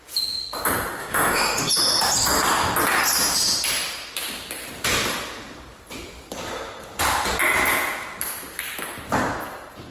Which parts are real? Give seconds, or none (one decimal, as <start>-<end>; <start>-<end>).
0.0-1.0; 1.7-9.9